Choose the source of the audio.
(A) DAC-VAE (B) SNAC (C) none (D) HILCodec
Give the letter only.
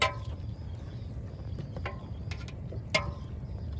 C